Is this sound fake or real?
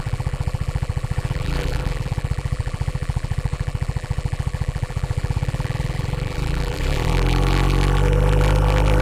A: fake